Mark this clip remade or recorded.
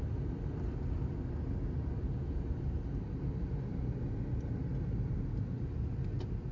recorded